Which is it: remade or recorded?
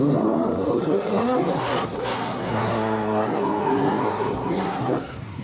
remade